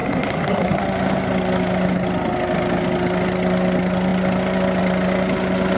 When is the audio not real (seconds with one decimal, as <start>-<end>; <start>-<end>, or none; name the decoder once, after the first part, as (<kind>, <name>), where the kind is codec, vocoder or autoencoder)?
0.0-0.8 (codec, SNAC)